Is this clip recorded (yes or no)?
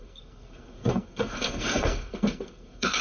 no